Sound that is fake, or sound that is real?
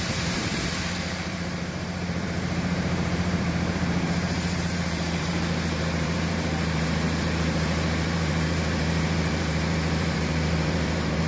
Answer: fake